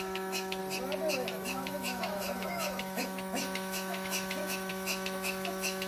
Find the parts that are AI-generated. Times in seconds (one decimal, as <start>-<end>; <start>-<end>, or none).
0.0-0.6; 1.1-5.9

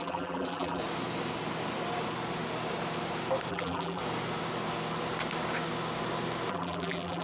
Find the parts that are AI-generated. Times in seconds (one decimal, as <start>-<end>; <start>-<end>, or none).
0.0-0.8; 3.5-4.0; 6.5-7.2

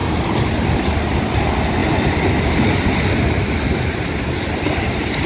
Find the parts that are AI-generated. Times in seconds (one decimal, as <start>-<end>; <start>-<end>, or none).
none